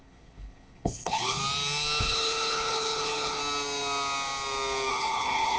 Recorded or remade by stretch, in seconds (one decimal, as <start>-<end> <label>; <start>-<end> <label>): 0.0-1.4 remade; 1.4-2.0 recorded; 2.0-3.4 remade; 3.4-4.9 recorded; 4.9-5.6 remade